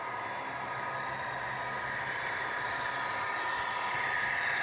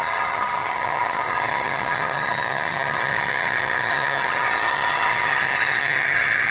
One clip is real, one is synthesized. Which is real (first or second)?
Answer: first